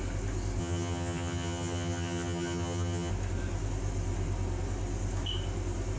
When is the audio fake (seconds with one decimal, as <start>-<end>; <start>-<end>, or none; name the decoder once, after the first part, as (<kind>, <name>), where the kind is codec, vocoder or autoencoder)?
0.6-3.1 (vocoder, HiFi-GAN)